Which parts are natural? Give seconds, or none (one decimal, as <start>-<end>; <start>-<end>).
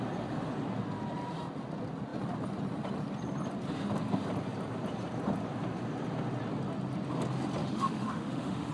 0.0-7.6